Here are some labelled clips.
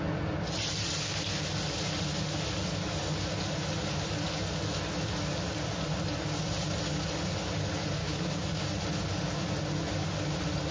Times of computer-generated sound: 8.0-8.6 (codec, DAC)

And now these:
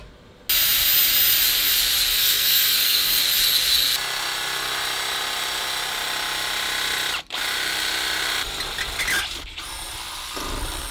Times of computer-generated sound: 2.1-3.2 (codec, SNAC)

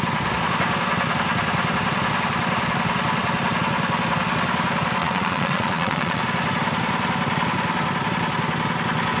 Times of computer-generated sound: 5.0-6.2 (vocoder, Vocos)